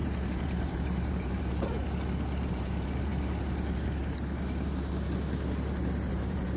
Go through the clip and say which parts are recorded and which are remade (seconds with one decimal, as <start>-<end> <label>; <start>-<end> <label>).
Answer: 0.0-1.8 remade; 1.8-2.5 recorded; 2.5-3.1 remade; 3.1-6.1 recorded; 6.1-6.6 remade